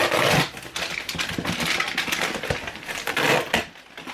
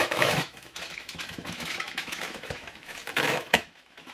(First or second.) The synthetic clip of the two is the second